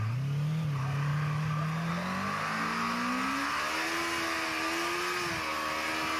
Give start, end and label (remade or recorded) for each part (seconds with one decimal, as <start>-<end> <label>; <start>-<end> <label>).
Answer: 0.0-6.2 recorded